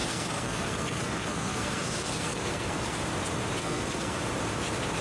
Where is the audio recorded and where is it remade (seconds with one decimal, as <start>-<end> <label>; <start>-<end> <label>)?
0.0-3.0 remade; 3.0-3.6 recorded; 3.6-4.2 remade; 4.2-5.0 recorded